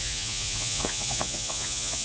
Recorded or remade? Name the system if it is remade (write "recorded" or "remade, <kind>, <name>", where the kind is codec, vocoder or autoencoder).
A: remade, vocoder, Vocos